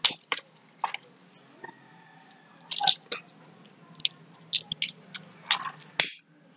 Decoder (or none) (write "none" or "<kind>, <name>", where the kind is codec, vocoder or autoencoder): none